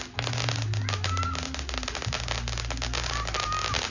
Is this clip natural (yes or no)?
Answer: yes